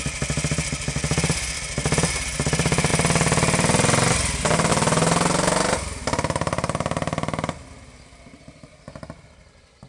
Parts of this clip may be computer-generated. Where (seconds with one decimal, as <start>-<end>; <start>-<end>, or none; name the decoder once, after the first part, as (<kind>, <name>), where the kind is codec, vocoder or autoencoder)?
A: none